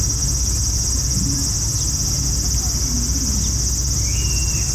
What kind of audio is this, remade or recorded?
recorded